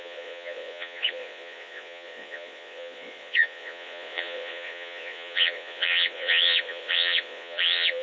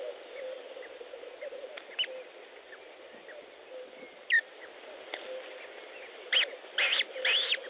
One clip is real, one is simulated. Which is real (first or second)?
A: second